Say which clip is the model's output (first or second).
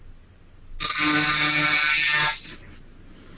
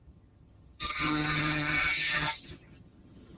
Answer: second